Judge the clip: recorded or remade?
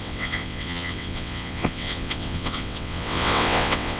remade